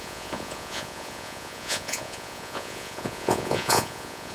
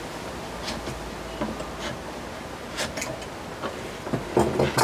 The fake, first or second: first